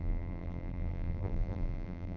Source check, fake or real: fake